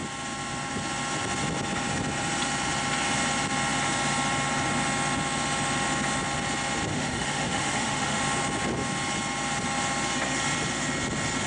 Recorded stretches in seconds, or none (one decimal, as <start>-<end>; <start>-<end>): 0.0-6.9; 8.2-11.5